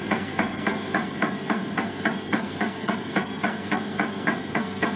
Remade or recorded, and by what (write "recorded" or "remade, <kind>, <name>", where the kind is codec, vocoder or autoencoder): remade, codec, SNAC